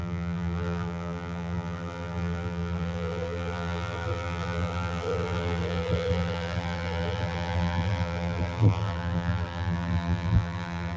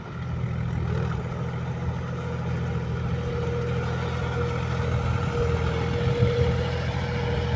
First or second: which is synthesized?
first